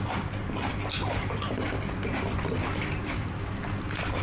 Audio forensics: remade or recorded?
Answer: recorded